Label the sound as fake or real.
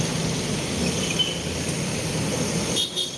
real